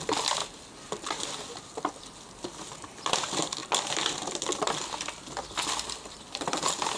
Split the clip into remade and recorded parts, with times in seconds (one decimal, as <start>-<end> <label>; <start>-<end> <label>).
0.0-7.0 recorded